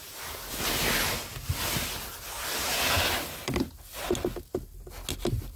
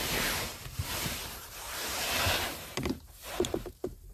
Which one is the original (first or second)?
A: first